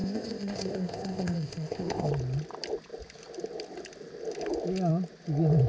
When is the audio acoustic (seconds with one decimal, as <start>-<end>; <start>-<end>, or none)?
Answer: 2.1-5.7